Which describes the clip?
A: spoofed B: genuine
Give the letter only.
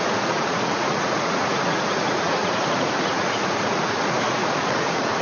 A